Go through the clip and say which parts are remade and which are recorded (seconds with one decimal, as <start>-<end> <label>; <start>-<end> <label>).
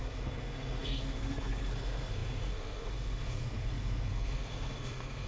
0.0-5.3 remade